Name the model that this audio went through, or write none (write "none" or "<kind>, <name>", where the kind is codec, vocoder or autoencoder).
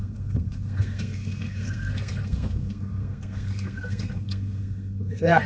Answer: codec, SNAC